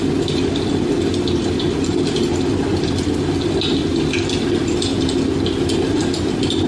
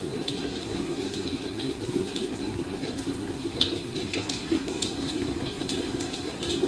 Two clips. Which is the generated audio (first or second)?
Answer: second